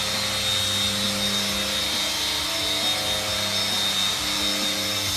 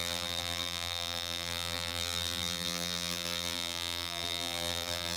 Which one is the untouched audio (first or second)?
first